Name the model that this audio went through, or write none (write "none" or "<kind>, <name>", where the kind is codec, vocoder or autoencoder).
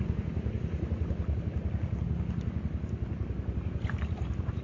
none